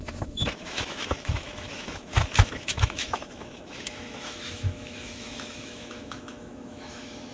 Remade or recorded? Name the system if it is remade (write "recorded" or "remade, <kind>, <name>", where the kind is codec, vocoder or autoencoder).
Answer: remade, autoencoder, DAC-VAE